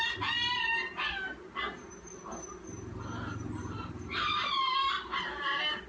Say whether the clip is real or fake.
real